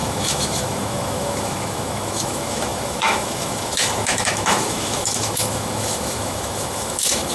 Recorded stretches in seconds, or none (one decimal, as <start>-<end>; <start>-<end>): none